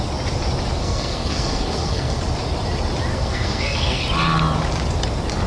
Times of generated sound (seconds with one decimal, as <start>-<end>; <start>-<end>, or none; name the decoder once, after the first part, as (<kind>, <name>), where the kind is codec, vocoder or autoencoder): 0.8-2.2 (codec, SNAC); 3.1-4.0